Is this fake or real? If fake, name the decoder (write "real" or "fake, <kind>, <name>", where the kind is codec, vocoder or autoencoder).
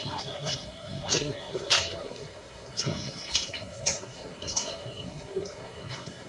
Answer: fake, codec, SNAC